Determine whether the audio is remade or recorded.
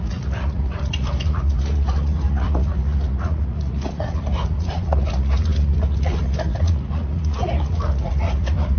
remade